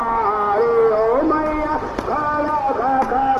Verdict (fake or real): real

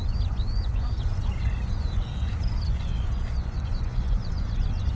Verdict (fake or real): fake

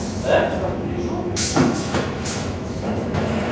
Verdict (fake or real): fake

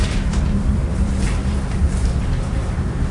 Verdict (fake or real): fake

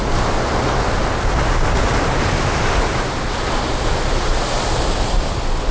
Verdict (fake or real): real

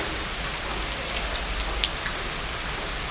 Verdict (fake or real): real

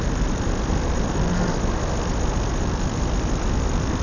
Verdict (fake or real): fake